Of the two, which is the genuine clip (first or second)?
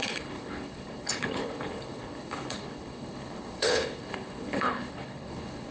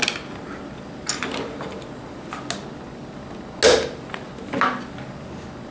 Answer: second